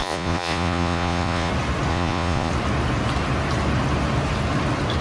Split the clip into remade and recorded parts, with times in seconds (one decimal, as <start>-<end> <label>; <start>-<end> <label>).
0.0-1.5 remade; 1.5-1.9 recorded; 1.9-2.5 remade; 2.5-5.0 recorded